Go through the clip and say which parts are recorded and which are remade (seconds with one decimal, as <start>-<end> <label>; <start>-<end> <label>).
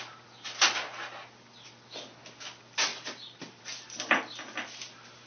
0.0-5.3 recorded